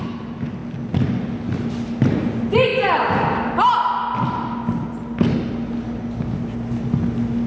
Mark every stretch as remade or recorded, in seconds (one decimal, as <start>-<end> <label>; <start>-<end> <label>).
0.0-7.5 recorded